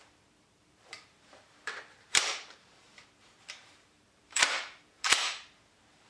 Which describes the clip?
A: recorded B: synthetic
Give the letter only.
B